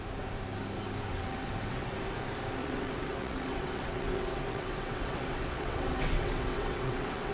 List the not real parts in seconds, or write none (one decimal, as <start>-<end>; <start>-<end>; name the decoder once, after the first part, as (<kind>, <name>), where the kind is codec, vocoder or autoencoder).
1.1-1.9 (vocoder, WaveNeXt); 2.6-7.3